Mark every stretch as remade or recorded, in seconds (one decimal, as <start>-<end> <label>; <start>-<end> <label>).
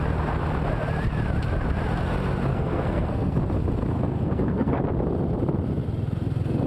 0.0-2.5 recorded; 2.5-3.4 remade; 3.4-3.8 recorded; 3.8-4.8 remade; 4.8-6.7 recorded